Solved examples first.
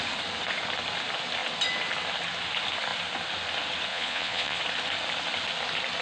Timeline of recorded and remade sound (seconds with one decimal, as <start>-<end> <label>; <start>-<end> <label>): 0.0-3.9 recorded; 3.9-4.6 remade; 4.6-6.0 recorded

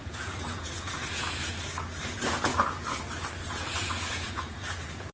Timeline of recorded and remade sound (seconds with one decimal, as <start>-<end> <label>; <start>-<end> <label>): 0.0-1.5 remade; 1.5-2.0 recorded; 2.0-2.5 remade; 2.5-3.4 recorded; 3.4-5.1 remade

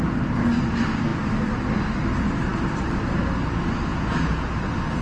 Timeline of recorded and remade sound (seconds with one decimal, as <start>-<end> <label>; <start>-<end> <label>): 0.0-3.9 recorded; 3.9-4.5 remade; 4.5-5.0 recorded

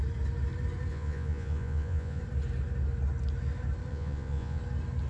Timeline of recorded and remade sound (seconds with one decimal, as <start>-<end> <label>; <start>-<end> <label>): 0.0-0.9 recorded; 0.9-2.2 remade; 2.2-3.9 recorded; 3.9-4.6 remade; 4.6-5.1 recorded